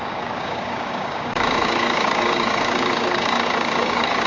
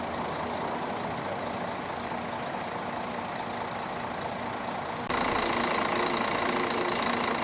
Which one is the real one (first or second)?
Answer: second